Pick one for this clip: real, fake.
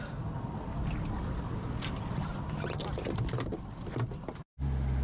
real